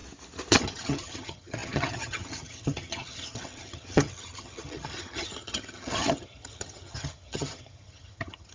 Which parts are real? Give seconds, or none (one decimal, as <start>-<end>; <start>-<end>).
0.0-0.5